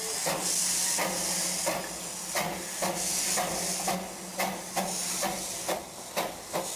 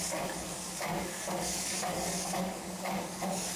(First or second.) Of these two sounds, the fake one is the second